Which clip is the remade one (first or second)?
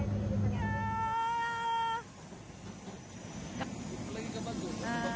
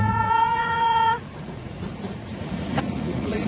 second